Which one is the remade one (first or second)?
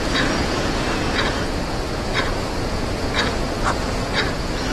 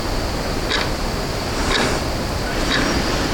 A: first